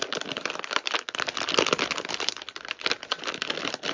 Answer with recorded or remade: recorded